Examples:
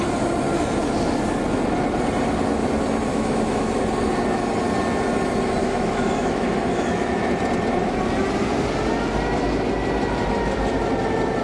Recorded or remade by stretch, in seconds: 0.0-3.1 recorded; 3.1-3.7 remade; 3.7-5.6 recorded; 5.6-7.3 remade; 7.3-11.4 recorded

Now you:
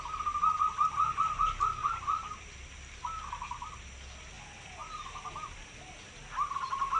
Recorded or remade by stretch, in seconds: 0.0-1.8 recorded; 1.8-3.0 remade; 3.0-7.0 recorded

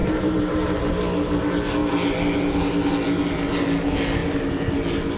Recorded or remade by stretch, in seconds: 0.0-1.0 remade; 1.0-5.2 recorded

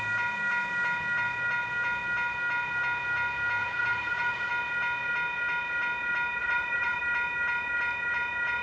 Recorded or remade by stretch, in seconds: 0.0-3.6 recorded; 3.6-4.5 remade; 4.5-6.4 recorded; 6.4-7.0 remade; 7.0-8.6 recorded

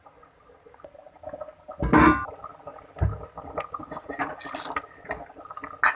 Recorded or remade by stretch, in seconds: 0.0-6.0 recorded

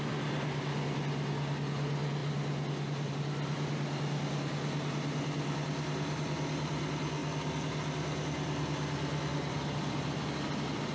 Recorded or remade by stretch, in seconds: 0.0-10.9 recorded

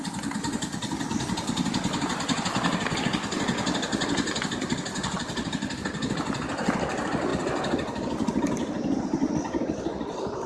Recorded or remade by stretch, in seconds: 0.0-10.5 recorded

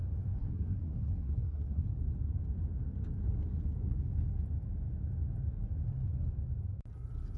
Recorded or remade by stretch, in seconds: 0.0-0.4 recorded; 0.4-1.8 remade; 1.8-7.4 recorded